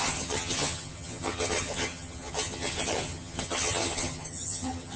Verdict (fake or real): fake